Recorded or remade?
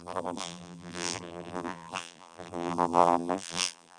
remade